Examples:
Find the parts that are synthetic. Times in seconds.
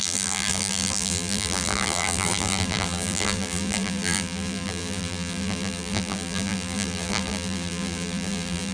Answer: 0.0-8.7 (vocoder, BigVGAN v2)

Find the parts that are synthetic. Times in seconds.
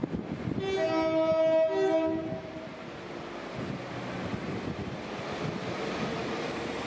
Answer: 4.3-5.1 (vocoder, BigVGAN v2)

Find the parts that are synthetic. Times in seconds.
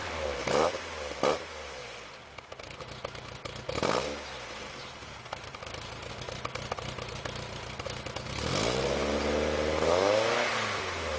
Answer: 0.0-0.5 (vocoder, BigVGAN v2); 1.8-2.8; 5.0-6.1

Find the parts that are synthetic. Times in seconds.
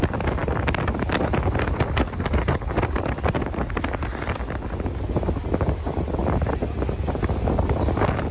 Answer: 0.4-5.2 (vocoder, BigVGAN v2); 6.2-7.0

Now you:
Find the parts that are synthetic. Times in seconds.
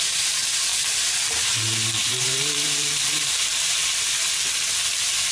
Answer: 0.7-3.9 (vocoder, BigVGAN v2)